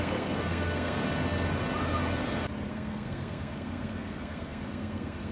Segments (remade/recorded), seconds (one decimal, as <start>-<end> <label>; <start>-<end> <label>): 0.0-1.0 remade; 1.0-2.7 recorded; 2.7-5.3 remade

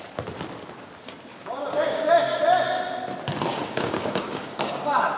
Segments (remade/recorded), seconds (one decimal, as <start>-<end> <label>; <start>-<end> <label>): 0.0-1.3 recorded; 1.3-2.1 remade; 2.1-3.5 recorded; 3.5-4.7 remade; 4.7-5.2 recorded